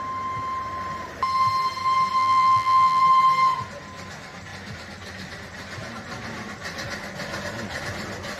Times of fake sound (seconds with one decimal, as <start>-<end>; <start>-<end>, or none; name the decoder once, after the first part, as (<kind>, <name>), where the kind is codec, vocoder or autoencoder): 2.2-3.0 (vocoder, BigVGAN v2)